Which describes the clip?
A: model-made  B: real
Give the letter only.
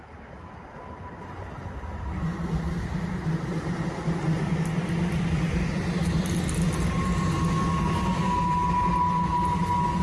B